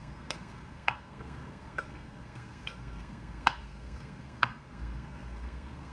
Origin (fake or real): fake